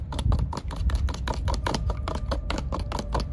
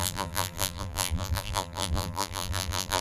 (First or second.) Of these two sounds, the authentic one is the first